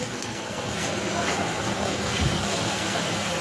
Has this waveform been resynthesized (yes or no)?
yes